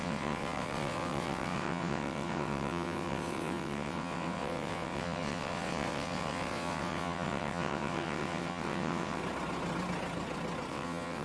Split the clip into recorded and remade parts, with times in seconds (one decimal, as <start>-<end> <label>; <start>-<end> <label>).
0.0-9.2 remade; 9.2-10.7 recorded; 10.7-11.2 remade